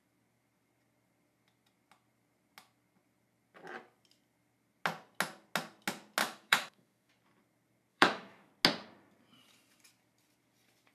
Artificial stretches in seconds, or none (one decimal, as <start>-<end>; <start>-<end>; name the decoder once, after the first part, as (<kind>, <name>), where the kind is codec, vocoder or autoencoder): 6.2-7.1 (autoencoder, DAC-VAE); 7.9-8.5